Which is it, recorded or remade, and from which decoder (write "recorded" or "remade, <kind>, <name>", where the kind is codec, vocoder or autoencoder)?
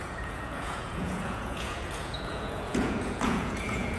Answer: remade, vocoder, Vocos